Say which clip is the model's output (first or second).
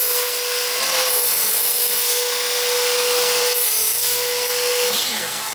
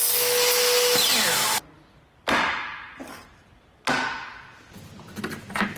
first